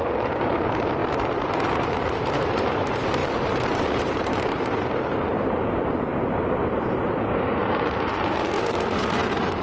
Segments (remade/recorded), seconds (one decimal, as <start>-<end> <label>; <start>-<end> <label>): 0.0-1.0 remade; 1.0-1.6 recorded; 1.6-9.6 remade